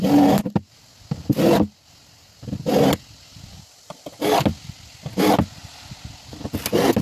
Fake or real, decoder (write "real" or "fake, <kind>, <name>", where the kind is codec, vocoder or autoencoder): real